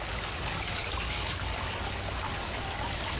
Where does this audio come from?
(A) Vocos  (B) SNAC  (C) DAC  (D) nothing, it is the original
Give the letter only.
C